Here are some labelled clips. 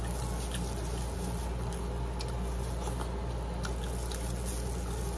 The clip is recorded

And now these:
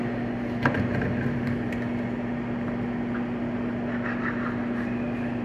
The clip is recorded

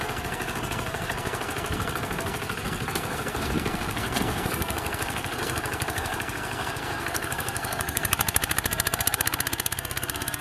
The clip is remade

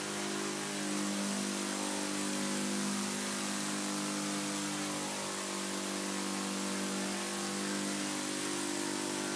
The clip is recorded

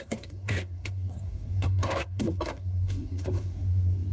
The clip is remade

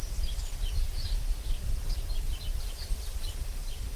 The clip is recorded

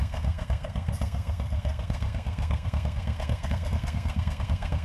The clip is remade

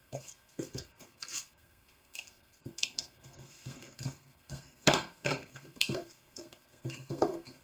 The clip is remade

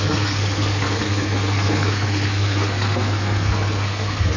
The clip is remade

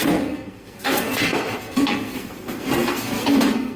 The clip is remade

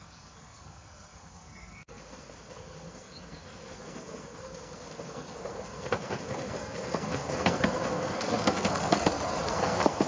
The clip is remade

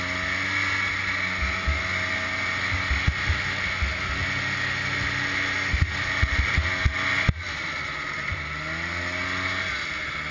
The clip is recorded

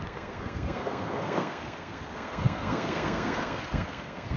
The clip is remade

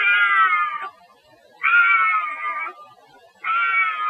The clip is recorded